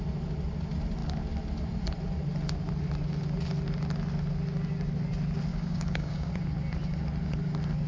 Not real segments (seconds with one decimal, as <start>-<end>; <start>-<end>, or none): 5.5-6.3